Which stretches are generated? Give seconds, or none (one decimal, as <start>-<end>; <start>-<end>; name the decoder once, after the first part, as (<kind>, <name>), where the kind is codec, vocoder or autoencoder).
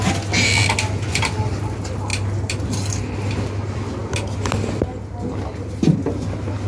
none